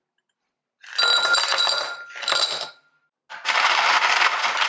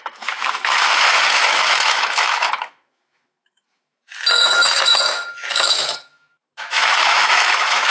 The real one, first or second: first